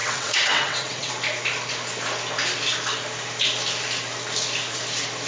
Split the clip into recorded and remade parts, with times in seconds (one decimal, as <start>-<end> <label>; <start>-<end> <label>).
0.0-1.1 remade; 1.1-5.3 recorded

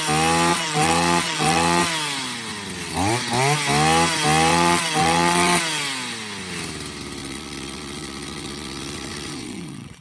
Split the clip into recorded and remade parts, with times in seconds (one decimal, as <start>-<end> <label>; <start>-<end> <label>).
0.0-0.5 recorded; 0.5-1.8 remade; 1.8-4.5 recorded; 4.5-5.6 remade; 5.6-7.2 recorded; 7.2-10.0 remade

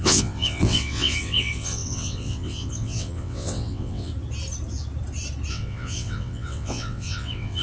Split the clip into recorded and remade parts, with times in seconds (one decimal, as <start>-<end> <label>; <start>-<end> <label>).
0.0-4.1 remade; 4.1-5.5 recorded; 5.5-7.6 remade

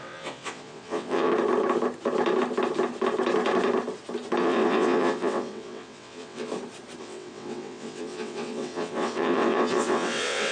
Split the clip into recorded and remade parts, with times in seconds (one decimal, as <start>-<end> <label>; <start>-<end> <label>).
0.0-1.3 remade; 1.3-4.4 recorded; 4.4-6.5 remade; 6.5-7.0 recorded; 7.0-10.5 remade

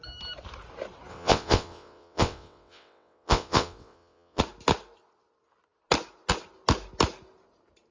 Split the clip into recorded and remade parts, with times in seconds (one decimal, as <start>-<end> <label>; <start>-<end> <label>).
0.0-1.1 recorded; 1.1-4.4 remade; 4.4-7.9 recorded

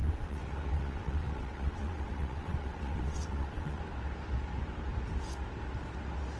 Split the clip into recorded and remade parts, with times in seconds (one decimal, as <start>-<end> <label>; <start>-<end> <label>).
0.0-3.8 remade; 3.8-6.4 recorded

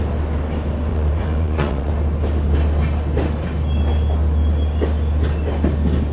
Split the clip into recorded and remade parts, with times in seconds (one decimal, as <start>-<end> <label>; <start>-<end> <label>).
0.0-0.9 recorded; 0.9-1.9 remade; 1.9-6.1 recorded